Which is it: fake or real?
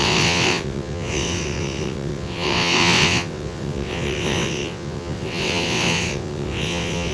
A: fake